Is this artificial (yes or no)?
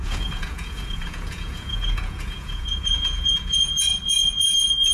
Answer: yes